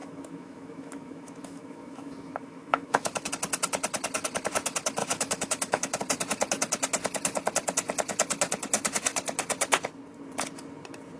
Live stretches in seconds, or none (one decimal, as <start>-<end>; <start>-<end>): 3.3-5.0; 6.0-11.2